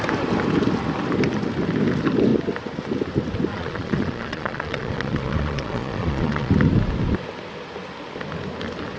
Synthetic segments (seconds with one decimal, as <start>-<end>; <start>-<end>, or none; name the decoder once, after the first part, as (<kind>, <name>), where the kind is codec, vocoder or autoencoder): 3.5-6.5 (vocoder, Vocos)